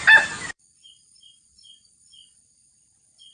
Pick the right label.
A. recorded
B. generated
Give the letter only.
B